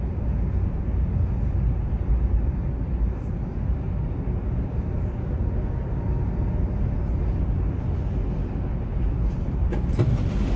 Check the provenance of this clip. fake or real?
real